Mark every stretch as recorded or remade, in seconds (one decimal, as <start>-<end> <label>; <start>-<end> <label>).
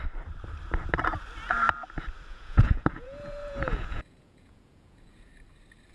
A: 0.0-2.3 recorded; 2.3-5.3 remade; 5.3-5.9 recorded